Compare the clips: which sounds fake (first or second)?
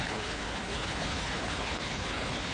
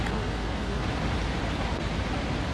first